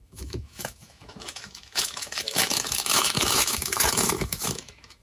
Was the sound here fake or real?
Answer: fake